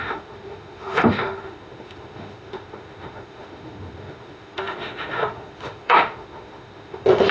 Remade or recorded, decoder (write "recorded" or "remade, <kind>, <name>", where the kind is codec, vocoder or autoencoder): remade, autoencoder, DAC-VAE